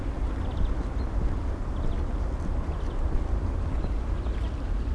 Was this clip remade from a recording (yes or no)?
no